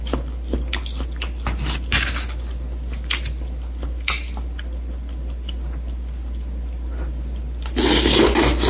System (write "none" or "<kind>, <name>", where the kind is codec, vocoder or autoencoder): none